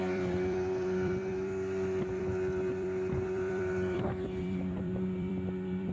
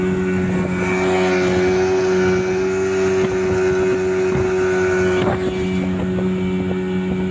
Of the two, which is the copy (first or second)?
first